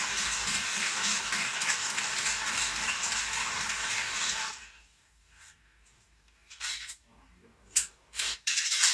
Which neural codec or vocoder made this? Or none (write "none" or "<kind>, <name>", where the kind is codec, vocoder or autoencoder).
codec, DAC